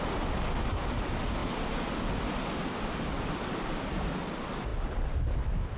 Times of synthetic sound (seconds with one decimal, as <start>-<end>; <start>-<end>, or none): 0.0-4.7